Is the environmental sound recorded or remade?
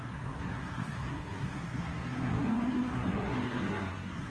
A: remade